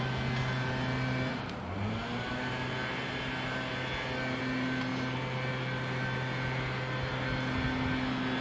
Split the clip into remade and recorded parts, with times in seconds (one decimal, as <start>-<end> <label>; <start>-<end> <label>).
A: 0.0-8.4 recorded